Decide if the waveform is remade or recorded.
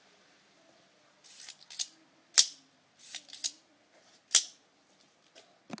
recorded